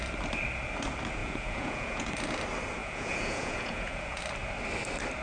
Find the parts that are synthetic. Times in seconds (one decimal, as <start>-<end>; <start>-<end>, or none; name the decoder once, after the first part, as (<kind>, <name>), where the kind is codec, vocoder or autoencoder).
1.2-2.1 (vocoder, Vocos); 2.8-4.2